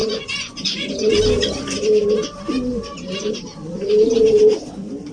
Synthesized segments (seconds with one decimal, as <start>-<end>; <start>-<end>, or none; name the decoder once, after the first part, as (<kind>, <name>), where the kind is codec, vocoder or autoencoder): 0.0-1.2 (vocoder, Vocos)